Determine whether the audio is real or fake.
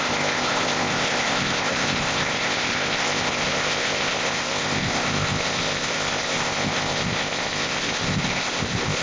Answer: fake